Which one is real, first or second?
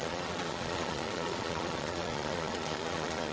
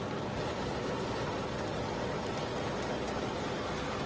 second